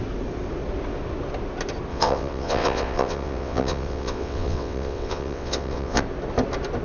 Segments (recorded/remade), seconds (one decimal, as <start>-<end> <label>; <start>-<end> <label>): 0.0-1.9 recorded; 1.9-6.0 remade; 6.0-6.8 recorded

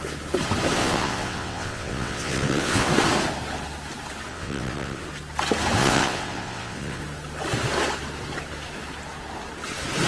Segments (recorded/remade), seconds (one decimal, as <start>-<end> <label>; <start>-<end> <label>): 0.0-0.8 recorded; 0.8-2.9 remade; 2.9-4.3 recorded; 4.3-5.0 remade; 5.0-5.8 recorded; 5.8-7.0 remade; 7.0-10.1 recorded

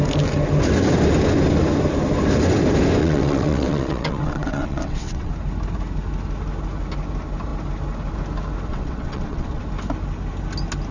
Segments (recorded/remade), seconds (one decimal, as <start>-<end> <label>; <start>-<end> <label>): 0.0-3.0 recorded; 3.0-5.3 remade; 5.3-8.7 recorded; 8.7-9.6 remade; 9.6-10.9 recorded

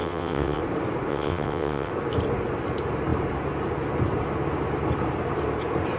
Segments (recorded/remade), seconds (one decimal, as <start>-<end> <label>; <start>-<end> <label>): 0.0-0.6 remade; 0.6-1.1 recorded; 1.1-1.9 remade; 1.9-6.0 recorded

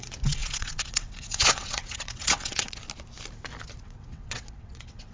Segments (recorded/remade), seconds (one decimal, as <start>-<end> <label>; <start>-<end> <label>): 0.0-2.8 remade; 2.8-3.8 recorded; 3.8-5.1 remade

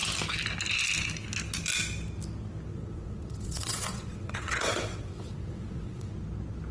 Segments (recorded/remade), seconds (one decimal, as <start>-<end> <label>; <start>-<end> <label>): 0.0-2.7 recorded; 2.7-6.1 remade; 6.1-6.7 recorded